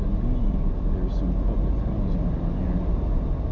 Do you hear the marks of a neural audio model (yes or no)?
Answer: no